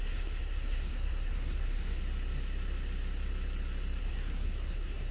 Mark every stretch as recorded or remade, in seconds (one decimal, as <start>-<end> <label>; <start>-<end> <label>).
0.0-2.0 remade; 2.0-4.0 recorded; 4.0-5.1 remade